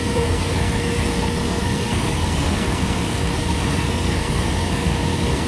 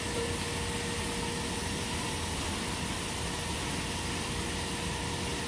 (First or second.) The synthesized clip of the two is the first